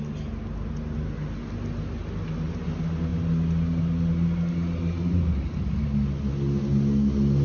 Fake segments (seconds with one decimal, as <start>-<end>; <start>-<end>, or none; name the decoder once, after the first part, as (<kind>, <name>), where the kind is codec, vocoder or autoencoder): none